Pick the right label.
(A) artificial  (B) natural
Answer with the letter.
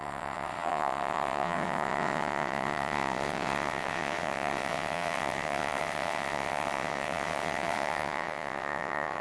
A